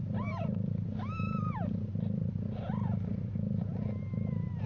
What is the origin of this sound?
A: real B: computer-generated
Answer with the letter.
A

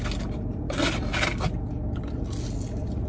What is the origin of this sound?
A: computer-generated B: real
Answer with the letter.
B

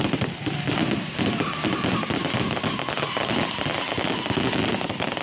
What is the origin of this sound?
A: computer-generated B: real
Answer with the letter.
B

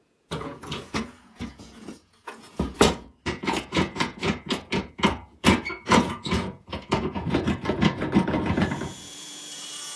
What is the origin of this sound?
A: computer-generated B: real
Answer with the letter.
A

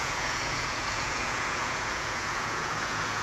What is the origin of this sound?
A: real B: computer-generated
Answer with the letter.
B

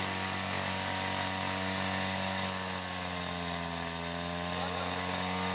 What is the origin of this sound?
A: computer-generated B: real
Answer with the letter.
B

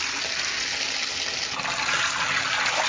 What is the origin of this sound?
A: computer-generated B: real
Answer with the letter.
B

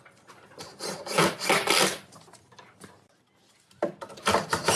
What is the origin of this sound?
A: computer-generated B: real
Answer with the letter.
B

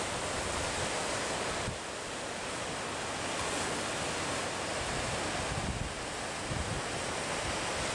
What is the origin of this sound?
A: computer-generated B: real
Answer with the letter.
B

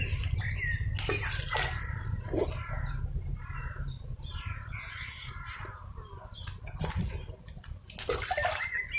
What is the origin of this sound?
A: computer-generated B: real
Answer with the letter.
B